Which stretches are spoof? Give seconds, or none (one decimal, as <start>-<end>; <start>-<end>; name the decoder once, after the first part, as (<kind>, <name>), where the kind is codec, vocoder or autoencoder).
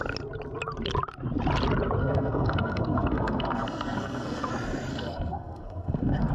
2.0-4.5 (codec, SNAC); 4.9-6.3